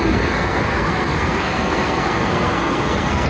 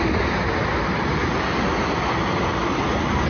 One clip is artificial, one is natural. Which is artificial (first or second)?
first